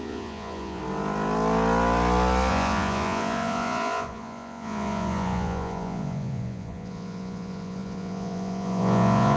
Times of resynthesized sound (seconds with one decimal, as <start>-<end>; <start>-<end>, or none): 0.0-0.8; 2.5-9.4